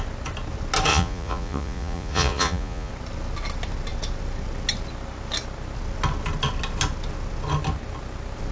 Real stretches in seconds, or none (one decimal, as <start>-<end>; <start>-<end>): 0.0-0.9; 2.9-8.5